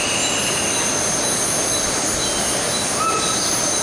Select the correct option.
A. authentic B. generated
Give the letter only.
A